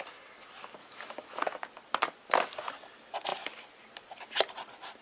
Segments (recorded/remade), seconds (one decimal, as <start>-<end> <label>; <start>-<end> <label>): 0.0-0.8 recorded; 0.8-1.4 remade; 1.4-5.0 recorded